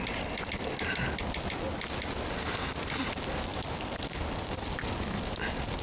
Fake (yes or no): no